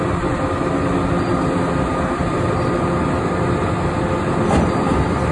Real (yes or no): yes